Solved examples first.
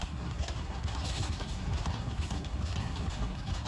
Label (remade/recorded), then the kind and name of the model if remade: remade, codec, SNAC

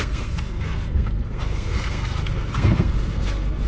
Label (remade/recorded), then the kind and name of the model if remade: remade, codec, SNAC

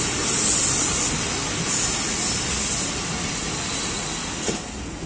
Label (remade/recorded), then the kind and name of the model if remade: recorded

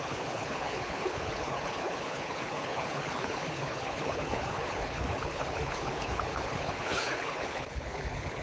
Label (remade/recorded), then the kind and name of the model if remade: remade, codec, HILCodec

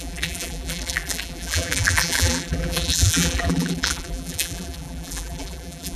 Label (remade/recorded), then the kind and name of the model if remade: remade, vocoder, BigVGAN v2